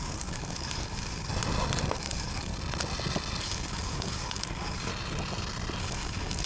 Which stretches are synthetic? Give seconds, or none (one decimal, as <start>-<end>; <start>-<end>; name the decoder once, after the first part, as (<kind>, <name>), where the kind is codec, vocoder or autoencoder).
0.0-1.3 (codec, DAC); 1.9-2.5; 3.4-4.9; 5.8-6.5